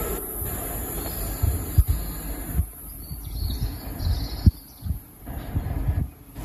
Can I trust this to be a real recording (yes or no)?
yes